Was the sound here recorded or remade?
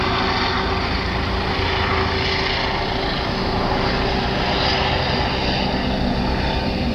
recorded